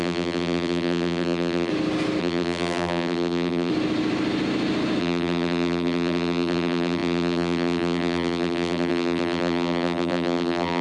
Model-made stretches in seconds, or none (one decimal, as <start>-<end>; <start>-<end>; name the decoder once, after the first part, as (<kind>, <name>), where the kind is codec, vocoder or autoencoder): 0.0-1.7 (vocoder, BigVGAN v2); 2.2-3.7; 5.0-10.8